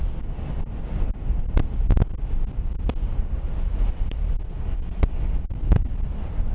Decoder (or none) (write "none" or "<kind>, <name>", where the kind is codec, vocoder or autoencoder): none